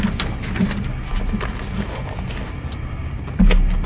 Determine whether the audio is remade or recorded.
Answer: recorded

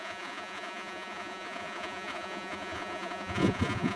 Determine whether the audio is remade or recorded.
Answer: remade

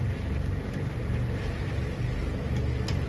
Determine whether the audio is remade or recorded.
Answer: recorded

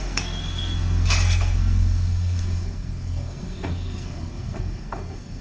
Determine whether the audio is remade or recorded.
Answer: remade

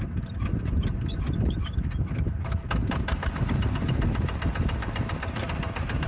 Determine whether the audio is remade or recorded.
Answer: remade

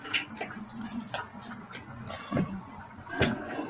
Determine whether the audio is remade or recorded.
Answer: remade